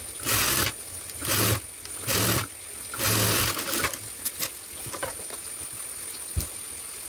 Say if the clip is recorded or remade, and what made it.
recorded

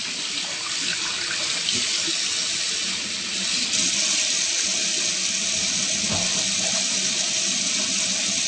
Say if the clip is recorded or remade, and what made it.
recorded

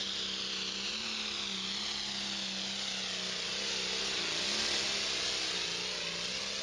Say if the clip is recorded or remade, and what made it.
recorded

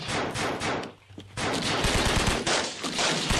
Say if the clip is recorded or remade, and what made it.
recorded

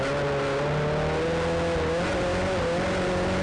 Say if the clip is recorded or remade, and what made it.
recorded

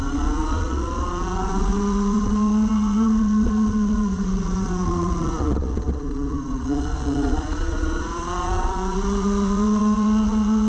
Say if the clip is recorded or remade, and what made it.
remade, vocoder, Vocos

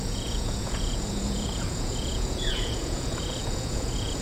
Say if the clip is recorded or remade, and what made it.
remade, vocoder, Vocos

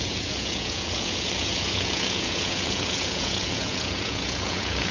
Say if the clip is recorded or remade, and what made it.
remade, vocoder, Vocos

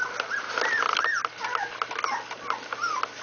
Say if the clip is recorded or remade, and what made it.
recorded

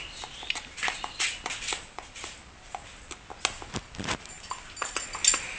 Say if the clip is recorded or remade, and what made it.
recorded